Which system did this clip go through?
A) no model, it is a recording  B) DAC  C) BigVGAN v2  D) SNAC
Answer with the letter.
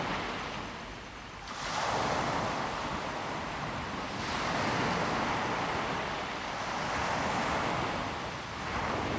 A